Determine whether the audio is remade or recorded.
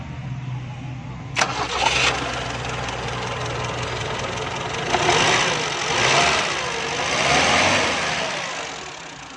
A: recorded